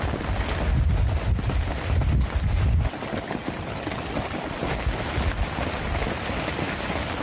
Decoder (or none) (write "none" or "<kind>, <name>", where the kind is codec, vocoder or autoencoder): none